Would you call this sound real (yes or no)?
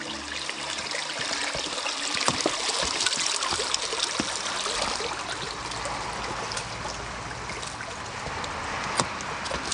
yes